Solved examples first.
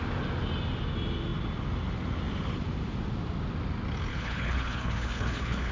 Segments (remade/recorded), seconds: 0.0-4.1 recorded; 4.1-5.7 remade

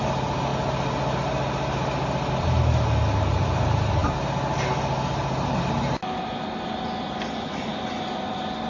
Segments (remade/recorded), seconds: 0.0-8.7 recorded

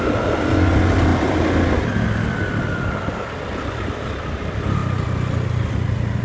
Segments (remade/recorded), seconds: 0.0-6.2 recorded

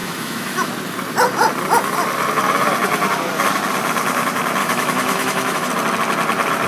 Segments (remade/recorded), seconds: 0.0-0.7 remade; 0.7-4.6 recorded; 4.6-5.7 remade; 5.7-6.7 recorded

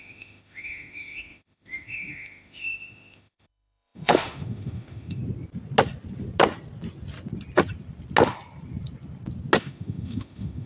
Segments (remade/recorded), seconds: 0.0-5.2 remade; 5.2-9.6 recorded; 9.6-10.7 remade

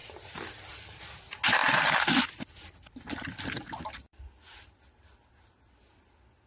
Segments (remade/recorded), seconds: 0.0-1.0 remade; 1.0-1.6 recorded; 1.6-5.3 remade; 5.3-6.5 recorded

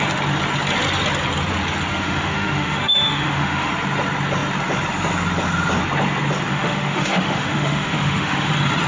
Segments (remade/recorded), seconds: 0.0-1.9 recorded; 1.9-3.7 remade; 3.7-6.5 recorded; 6.5-8.5 remade; 8.5-8.9 recorded